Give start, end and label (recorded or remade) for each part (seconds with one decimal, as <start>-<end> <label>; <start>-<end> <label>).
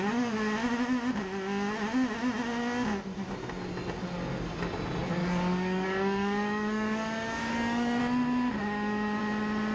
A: 0.0-5.2 recorded; 5.2-8.0 remade; 8.0-8.6 recorded; 8.6-9.2 remade; 9.2-9.7 recorded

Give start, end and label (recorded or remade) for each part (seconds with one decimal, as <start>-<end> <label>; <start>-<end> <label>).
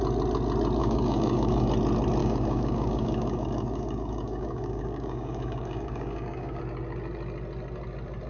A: 0.0-0.8 recorded; 0.8-1.7 remade; 1.7-2.2 recorded; 2.2-6.6 remade; 6.6-8.3 recorded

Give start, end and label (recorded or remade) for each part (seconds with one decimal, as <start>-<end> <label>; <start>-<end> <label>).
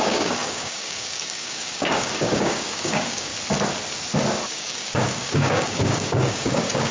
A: 0.0-3.3 remade; 3.3-4.5 recorded; 4.5-6.9 remade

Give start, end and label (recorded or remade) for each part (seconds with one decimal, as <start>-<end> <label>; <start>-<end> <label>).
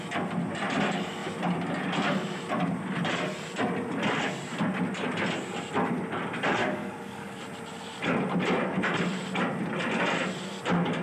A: 0.0-6.6 recorded; 6.6-7.4 remade; 7.4-11.0 recorded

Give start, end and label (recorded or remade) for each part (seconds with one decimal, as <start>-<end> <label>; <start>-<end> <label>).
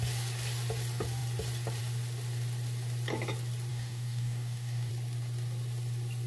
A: 0.0-3.7 recorded; 3.7-4.9 remade; 4.9-6.3 recorded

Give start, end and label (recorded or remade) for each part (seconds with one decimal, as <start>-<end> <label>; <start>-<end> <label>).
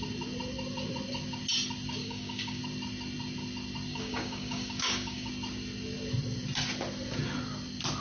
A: 0.0-2.0 recorded; 2.0-2.6 remade; 2.6-3.9 recorded; 3.9-5.3 remade; 5.3-8.0 recorded